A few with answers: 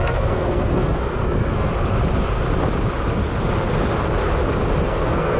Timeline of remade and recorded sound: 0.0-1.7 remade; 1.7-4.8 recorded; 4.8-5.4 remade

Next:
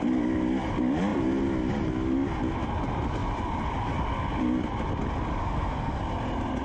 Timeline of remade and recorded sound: 0.0-5.4 recorded; 5.4-6.0 remade; 6.0-6.6 recorded

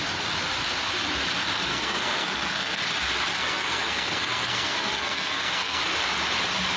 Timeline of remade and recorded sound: 0.0-1.7 recorded; 1.7-2.8 remade; 2.8-3.3 recorded; 3.3-5.8 remade; 5.8-6.8 recorded

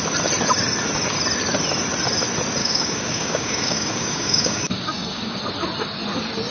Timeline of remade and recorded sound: 0.0-2.6 recorded; 2.6-5.4 remade; 5.4-6.5 recorded

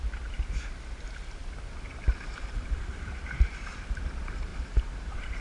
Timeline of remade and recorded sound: 0.0-1.4 recorded; 1.4-4.1 remade; 4.1-4.5 recorded; 4.5-5.4 remade

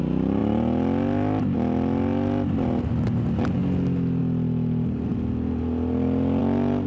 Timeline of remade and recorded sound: 0.0-6.9 recorded

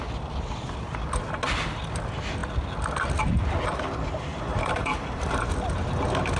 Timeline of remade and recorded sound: 0.0-4.3 recorded; 4.3-5.5 remade; 5.5-6.4 recorded